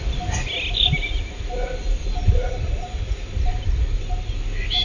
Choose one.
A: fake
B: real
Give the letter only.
B